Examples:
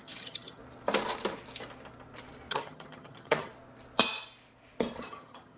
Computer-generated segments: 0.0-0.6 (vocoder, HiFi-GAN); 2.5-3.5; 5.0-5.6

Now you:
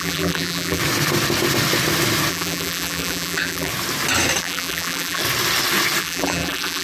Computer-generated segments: 0.0-0.8 (vocoder, BigVGAN v2); 2.3-3.7; 4.4-5.2; 6.0-6.8